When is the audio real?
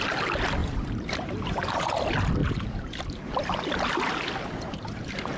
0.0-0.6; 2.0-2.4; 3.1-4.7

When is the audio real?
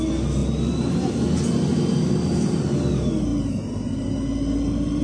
0.0-5.0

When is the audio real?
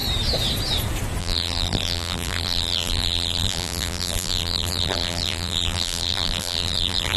0.0-1.2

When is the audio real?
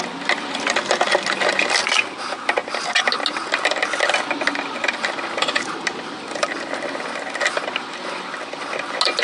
0.0-9.2